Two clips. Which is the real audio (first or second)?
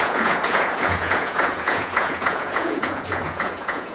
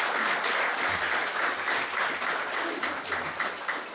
second